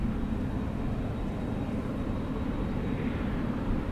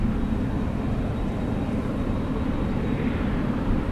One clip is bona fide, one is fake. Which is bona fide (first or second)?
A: first